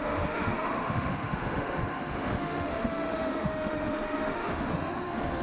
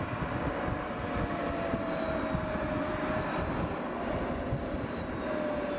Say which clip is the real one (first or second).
second